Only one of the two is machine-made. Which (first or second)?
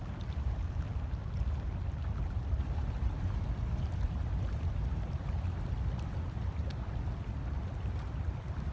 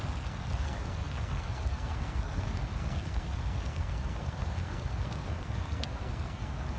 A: second